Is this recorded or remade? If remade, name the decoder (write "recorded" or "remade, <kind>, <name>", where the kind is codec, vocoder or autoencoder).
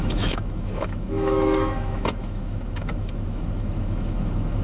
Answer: remade, autoencoder, DAC-VAE